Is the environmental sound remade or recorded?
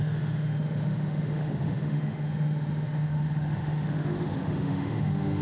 remade